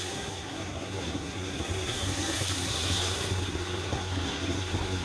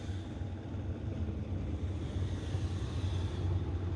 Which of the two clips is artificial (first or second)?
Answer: first